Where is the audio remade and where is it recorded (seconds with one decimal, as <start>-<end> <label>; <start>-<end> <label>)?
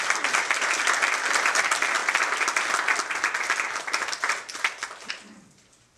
0.0-6.0 recorded